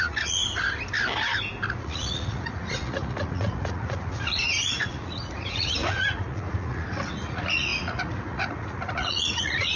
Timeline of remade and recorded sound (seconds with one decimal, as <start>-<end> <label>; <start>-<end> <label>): 0.0-0.4 remade; 0.4-1.7 recorded; 1.7-9.8 remade